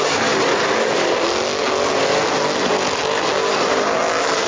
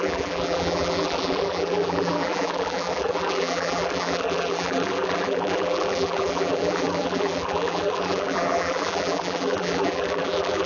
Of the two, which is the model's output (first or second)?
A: second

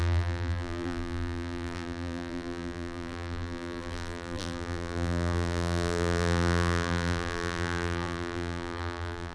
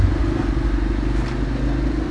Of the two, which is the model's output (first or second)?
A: first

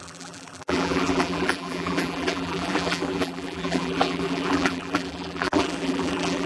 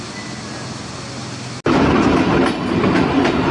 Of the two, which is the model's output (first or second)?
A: first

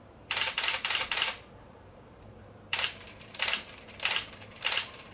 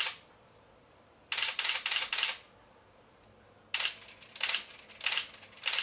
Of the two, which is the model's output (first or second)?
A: first